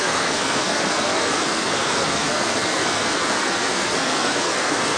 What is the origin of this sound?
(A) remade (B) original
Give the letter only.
A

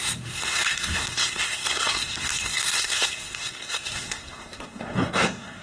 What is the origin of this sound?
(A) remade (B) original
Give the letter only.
A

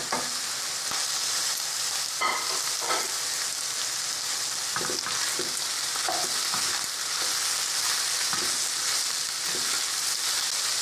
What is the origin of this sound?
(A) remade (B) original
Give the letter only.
B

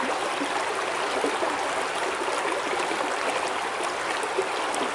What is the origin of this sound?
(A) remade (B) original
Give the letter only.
B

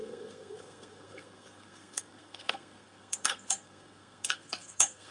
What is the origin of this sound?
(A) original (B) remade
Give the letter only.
B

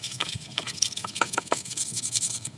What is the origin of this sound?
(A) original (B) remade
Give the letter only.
B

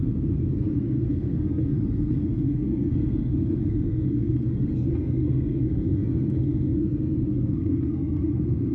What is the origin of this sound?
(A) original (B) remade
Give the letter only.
B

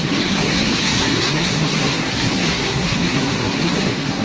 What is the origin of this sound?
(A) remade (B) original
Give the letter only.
A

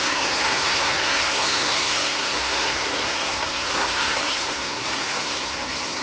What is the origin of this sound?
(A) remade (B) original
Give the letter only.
A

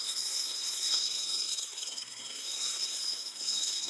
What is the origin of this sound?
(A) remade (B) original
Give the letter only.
A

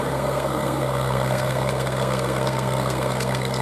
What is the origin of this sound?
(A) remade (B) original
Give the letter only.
A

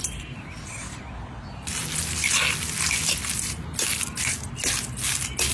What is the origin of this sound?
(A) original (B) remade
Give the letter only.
A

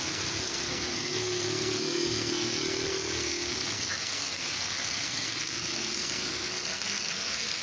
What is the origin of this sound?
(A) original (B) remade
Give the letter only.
B